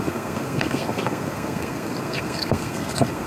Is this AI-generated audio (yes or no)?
yes